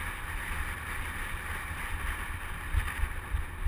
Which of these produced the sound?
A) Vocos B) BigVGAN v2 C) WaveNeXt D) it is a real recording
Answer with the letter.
D